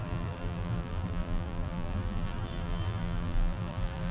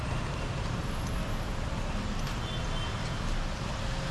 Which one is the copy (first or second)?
first